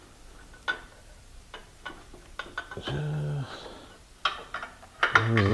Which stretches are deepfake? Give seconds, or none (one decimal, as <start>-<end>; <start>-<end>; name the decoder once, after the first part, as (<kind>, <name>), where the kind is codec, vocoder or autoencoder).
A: none